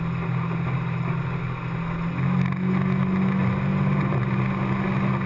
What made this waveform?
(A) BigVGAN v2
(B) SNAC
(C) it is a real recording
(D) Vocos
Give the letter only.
C